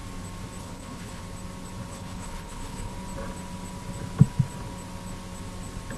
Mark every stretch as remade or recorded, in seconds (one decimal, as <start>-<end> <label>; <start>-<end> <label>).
0.0-0.6 recorded; 0.6-1.2 remade; 1.2-1.9 recorded; 1.9-2.9 remade; 2.9-6.0 recorded